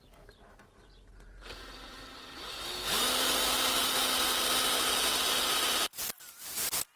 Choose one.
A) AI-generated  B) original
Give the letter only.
B